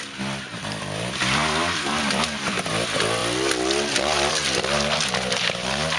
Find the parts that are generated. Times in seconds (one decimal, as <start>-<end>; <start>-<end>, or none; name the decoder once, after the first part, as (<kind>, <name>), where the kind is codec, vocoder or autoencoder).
0.5-2.7 (vocoder, BigVGAN v2)